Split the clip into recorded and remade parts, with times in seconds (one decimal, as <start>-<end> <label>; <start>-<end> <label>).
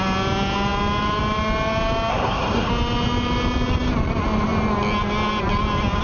0.0-2.1 recorded; 2.1-2.7 remade; 2.7-6.0 recorded